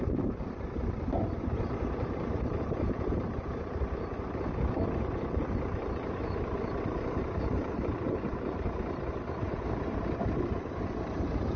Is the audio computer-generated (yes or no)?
yes